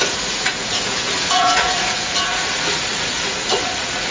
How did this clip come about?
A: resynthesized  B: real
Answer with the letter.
A